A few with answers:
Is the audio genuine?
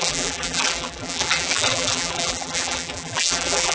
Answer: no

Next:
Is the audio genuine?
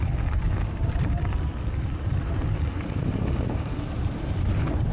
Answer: no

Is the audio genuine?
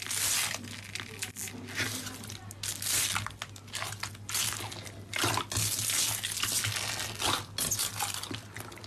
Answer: yes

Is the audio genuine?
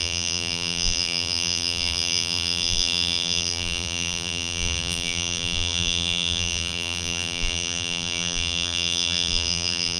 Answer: no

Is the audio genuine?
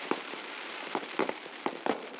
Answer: no